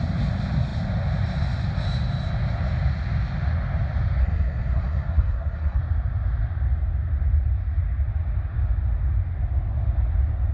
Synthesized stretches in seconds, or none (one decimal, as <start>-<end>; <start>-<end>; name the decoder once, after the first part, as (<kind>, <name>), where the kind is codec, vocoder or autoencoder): 4.2-5.8 (codec, SNAC)